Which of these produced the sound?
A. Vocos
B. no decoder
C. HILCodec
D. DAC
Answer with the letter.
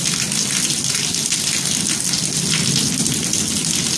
B